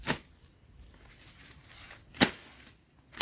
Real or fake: real